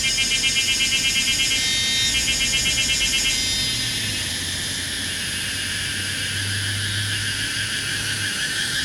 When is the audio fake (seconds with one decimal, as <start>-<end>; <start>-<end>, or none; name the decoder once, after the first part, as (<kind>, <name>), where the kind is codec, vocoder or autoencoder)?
7.9-8.8 (autoencoder, DAC-VAE)